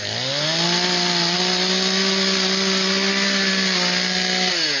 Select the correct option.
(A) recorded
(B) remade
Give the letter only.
A